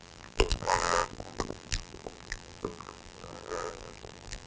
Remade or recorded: remade